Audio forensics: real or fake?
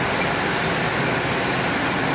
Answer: real